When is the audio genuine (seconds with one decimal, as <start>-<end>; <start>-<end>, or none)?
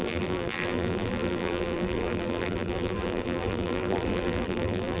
none